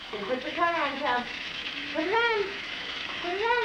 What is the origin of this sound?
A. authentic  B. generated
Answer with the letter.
B